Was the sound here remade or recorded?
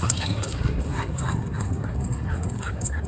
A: remade